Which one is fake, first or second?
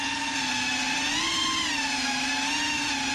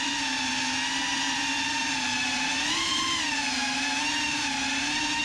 second